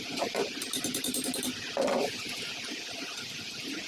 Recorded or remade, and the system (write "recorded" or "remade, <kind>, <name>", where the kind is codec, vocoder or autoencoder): remade, vocoder, BigVGAN v2